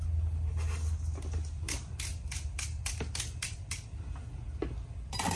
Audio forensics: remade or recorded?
recorded